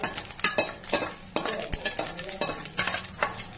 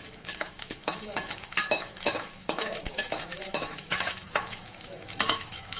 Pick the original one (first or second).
first